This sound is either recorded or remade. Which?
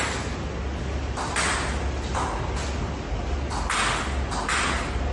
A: recorded